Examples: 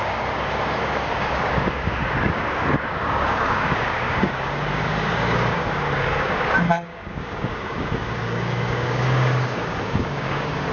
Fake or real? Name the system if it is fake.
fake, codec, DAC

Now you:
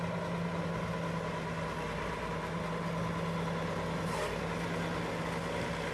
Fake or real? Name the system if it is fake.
real